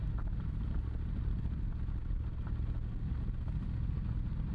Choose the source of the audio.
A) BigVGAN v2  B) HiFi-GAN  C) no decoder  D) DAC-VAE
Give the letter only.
C